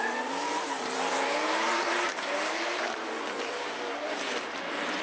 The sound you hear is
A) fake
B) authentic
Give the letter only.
A